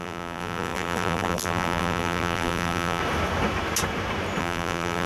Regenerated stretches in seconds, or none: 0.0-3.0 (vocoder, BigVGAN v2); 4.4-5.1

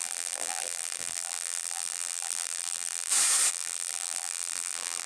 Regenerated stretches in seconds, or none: 0.0-3.1 (vocoder, BigVGAN v2); 3.5-5.1

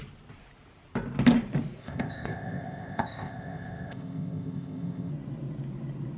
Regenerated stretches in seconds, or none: 1.8-5.1 (codec, ZipCodec)

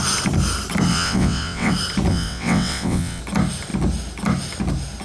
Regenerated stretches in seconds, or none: 0.9-1.7 (vocoder, WaveNeXt); 2.1-3.2